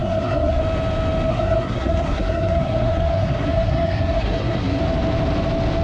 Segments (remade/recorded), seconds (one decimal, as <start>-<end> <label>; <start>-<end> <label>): 0.0-0.6 remade; 0.6-1.3 recorded; 1.3-4.8 remade; 4.8-5.8 recorded